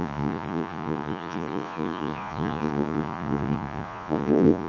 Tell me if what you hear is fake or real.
fake